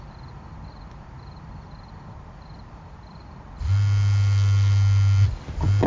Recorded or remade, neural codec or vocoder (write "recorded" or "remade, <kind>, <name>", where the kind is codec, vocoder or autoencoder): recorded